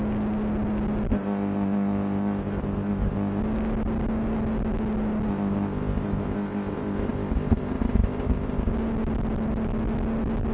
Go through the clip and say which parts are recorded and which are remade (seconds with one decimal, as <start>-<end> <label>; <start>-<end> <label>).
0.0-1.1 recorded; 1.1-3.4 remade; 3.4-5.3 recorded; 5.3-8.7 remade; 8.7-10.5 recorded